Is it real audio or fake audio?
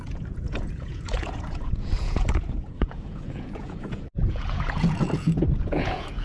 fake